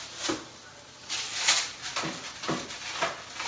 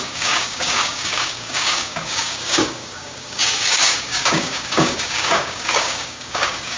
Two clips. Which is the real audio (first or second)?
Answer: first